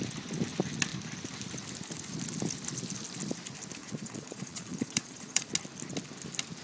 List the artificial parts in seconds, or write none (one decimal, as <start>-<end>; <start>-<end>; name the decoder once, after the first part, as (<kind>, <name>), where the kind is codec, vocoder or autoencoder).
3.8-5.5 (vocoder, Vocos)